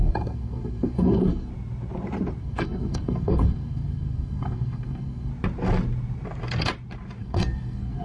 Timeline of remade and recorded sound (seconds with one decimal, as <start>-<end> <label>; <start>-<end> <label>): 0.0-1.5 remade; 1.5-2.4 recorded; 2.4-5.3 remade; 5.3-7.2 recorded; 7.2-8.0 remade